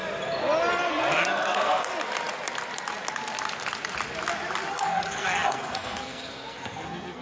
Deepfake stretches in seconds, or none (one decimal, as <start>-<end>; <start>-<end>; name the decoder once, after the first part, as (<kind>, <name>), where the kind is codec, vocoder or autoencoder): 1.1-1.9 (codec, SNAC); 4.7-7.2